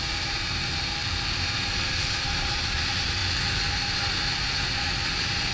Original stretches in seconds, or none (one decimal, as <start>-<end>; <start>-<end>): 3.2-5.1